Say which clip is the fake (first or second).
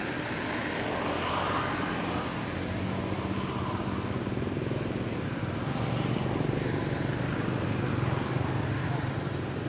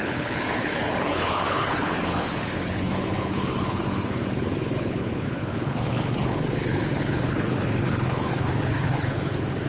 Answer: second